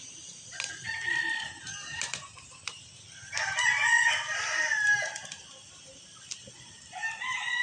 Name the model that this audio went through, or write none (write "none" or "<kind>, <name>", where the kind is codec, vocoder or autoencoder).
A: none